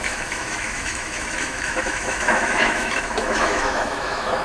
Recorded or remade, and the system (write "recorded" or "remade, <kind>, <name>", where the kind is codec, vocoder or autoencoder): remade, autoencoder, DAC-VAE